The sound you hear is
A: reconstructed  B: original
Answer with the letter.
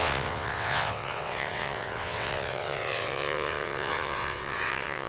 A